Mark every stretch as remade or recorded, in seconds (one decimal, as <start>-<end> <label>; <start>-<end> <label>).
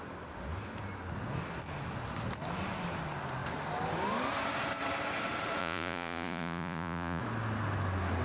0.0-5.6 recorded; 5.6-7.2 remade; 7.2-8.2 recorded